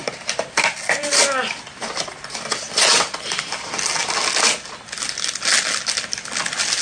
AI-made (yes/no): no